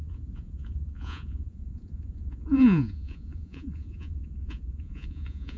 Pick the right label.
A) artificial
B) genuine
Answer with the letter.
A